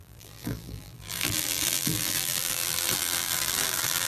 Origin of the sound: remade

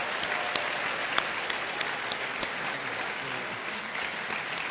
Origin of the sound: recorded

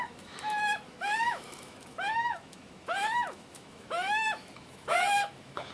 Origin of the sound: remade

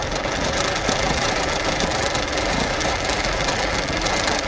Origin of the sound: remade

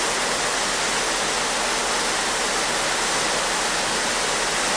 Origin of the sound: recorded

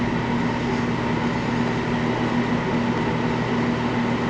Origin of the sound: recorded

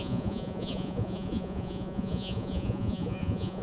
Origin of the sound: remade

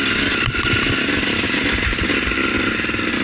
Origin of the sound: recorded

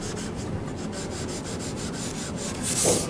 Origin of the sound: recorded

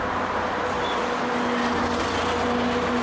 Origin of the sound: recorded